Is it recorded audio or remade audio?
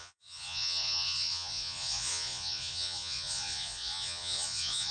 remade